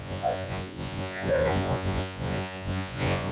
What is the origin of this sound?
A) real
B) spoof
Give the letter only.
B